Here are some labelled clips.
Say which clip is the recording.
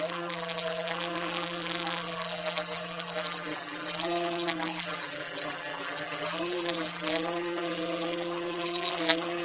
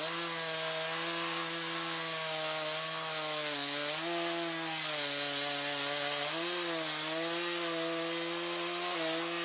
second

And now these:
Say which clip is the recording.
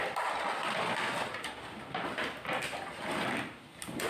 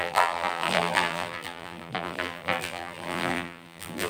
first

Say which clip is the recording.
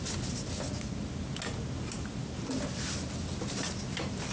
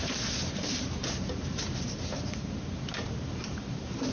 first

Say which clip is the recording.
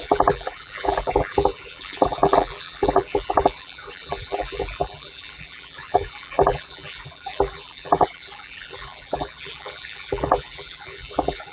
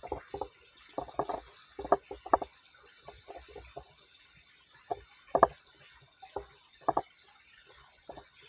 second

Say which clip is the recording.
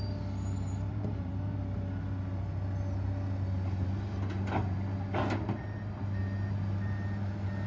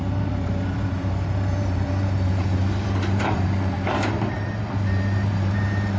first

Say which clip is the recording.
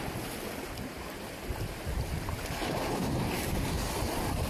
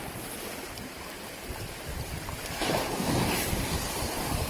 first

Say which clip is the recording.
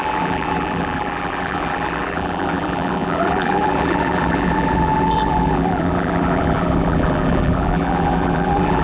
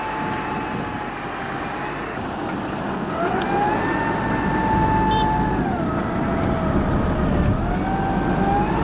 second